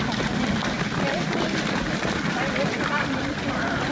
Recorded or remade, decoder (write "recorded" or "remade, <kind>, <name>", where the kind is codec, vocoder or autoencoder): recorded